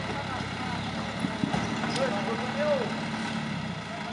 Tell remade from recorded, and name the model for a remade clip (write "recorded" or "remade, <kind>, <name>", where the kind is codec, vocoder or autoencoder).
recorded